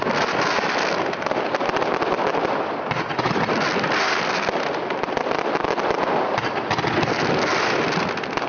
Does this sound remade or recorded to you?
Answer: recorded